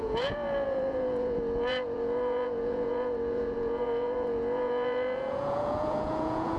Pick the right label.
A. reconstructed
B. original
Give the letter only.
A